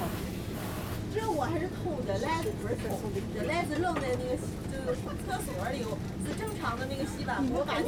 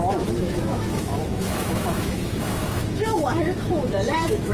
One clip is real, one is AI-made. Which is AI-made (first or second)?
second